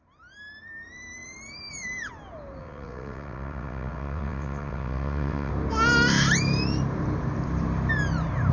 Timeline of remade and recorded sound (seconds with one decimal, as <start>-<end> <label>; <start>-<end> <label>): 0.0-2.6 recorded; 2.6-5.5 remade; 5.5-8.5 recorded